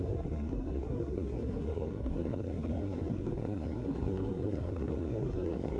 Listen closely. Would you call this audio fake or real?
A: fake